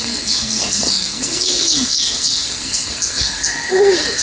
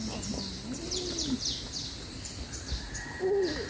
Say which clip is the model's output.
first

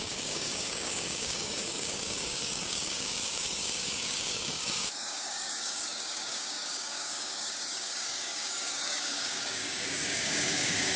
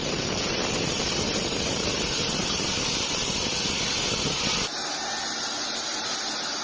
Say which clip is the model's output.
first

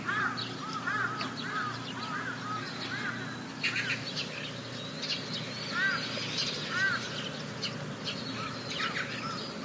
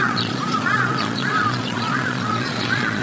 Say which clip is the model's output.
second